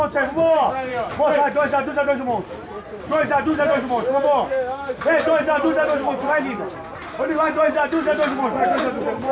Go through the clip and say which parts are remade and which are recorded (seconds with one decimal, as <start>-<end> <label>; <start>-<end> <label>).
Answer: 0.0-9.3 recorded